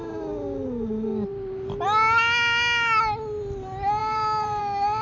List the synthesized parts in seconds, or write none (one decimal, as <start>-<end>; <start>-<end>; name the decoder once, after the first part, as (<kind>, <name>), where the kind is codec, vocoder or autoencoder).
4.0-4.6 (vocoder, BigVGAN v2)